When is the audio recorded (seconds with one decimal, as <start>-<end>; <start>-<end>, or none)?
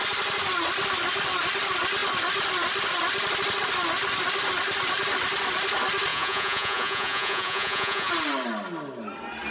0.0-6.1; 8.1-9.5